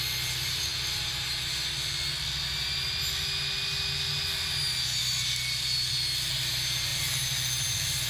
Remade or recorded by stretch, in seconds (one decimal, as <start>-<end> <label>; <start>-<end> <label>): 0.0-8.1 recorded